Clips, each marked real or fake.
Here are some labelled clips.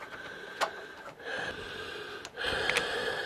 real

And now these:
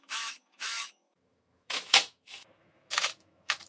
fake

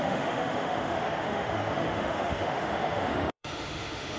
fake